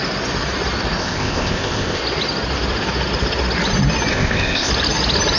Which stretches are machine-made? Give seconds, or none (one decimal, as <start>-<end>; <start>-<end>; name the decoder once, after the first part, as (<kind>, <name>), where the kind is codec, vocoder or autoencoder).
1.0-2.0 (codec, ZipCodec); 4.1-4.7

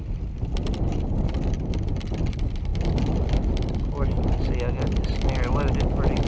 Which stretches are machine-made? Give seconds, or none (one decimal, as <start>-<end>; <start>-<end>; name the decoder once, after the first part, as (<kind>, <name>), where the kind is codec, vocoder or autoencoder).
none